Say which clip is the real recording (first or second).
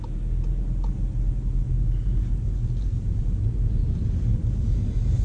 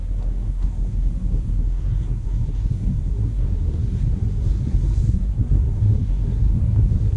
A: first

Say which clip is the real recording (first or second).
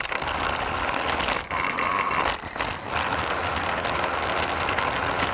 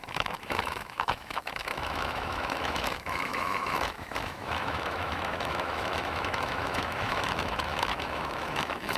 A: first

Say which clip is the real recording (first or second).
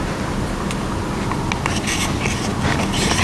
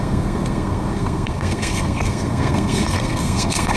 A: first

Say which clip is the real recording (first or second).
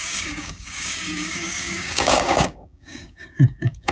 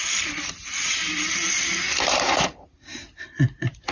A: second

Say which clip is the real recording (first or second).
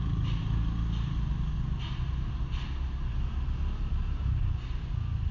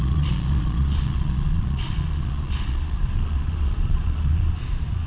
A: first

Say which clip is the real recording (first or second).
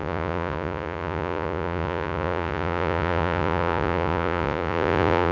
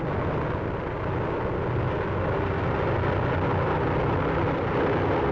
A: second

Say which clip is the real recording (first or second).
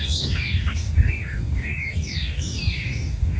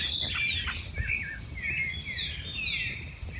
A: second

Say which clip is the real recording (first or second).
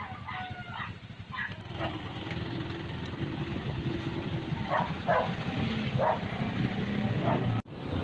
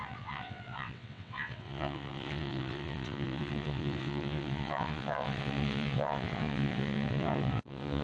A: first